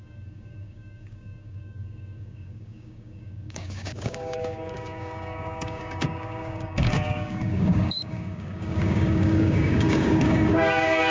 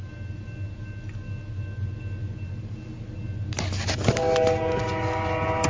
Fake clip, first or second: first